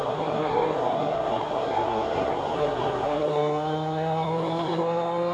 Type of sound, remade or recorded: remade